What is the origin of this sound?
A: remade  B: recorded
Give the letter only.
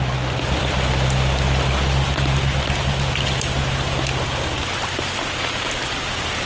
B